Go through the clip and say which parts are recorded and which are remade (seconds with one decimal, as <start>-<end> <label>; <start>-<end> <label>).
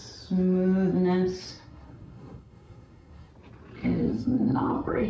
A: 0.0-1.5 recorded; 1.5-3.3 remade; 3.3-4.1 recorded; 4.1-5.1 remade